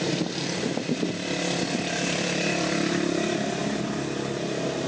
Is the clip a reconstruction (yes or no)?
no